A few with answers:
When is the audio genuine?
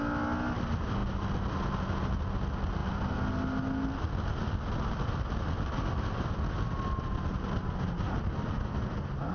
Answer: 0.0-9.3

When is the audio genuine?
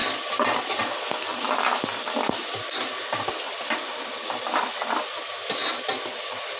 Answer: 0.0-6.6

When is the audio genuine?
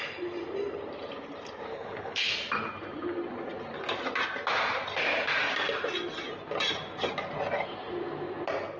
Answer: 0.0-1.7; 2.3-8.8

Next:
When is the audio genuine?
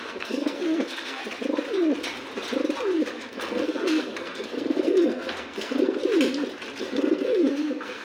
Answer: 1.2-3.1; 6.0-6.8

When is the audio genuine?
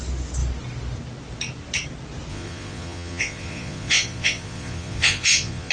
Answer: 0.0-2.3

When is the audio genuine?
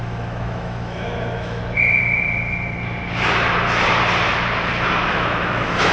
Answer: 1.6-5.1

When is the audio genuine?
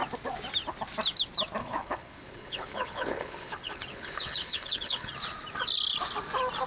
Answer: 0.0-1.6; 5.1-6.7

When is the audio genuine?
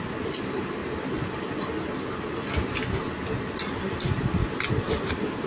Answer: 0.8-1.3; 4.4-5.1